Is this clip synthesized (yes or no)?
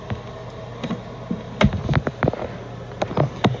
no